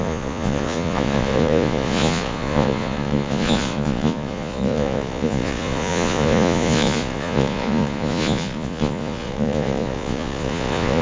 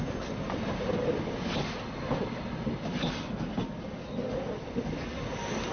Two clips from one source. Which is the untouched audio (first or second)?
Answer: second